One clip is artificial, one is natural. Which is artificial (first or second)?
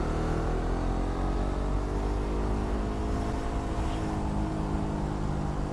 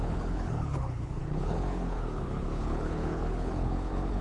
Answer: second